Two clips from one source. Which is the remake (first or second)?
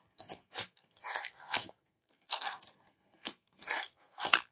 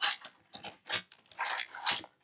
first